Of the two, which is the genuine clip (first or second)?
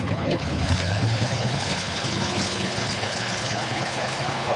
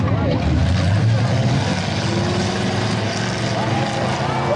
second